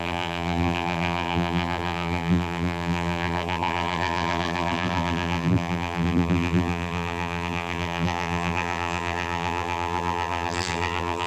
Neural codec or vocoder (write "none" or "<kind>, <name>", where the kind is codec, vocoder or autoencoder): vocoder, BigVGAN v2